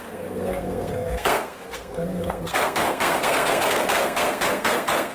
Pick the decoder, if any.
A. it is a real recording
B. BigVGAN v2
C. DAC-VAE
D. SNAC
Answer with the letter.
D